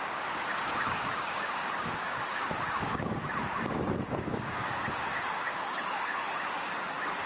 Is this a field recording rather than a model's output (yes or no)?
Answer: no